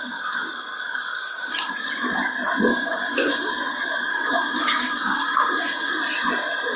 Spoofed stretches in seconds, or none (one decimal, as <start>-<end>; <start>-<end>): 1.1-1.7; 2.7-3.5; 4.1-5.9